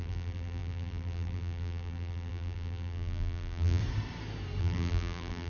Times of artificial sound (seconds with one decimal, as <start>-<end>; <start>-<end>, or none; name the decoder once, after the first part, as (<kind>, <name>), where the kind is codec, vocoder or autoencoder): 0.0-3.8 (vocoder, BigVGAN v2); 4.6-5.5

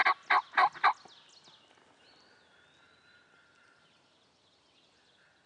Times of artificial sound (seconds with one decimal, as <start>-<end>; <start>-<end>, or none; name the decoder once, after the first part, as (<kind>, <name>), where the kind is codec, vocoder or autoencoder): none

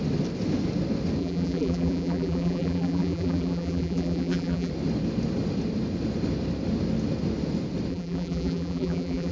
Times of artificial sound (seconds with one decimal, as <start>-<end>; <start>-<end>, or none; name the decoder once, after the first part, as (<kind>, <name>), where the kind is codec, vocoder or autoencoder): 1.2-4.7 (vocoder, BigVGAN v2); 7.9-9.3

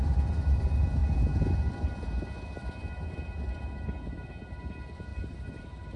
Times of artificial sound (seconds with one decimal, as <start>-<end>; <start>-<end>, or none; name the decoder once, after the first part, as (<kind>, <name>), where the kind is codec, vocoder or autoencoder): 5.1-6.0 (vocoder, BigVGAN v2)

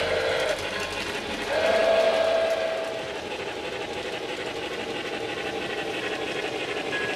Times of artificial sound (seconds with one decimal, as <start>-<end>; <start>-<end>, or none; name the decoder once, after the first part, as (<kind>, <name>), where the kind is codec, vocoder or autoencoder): none

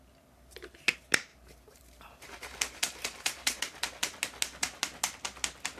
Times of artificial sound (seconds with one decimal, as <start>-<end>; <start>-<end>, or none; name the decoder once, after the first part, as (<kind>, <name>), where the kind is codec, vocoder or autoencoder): 1.3-3.6 (vocoder, BigVGAN v2)